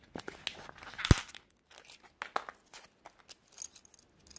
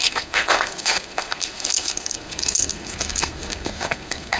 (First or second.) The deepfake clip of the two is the second